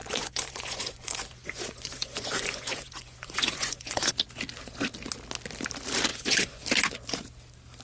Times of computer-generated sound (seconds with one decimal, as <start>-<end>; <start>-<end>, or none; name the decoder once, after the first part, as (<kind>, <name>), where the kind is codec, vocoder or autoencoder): 0.0-4.1 (vocoder, Vocos); 6.1-6.6